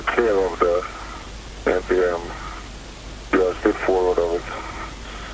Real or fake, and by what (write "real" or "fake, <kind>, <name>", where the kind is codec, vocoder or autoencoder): real